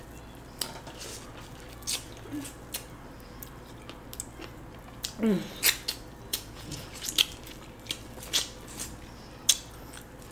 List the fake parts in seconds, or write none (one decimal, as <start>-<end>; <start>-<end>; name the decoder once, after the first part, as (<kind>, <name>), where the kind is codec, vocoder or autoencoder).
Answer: 6.3-6.8 (vocoder, Vocos)